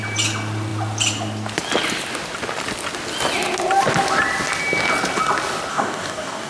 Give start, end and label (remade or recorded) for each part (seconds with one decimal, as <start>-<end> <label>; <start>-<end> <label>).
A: 0.0-5.7 recorded; 5.7-6.5 remade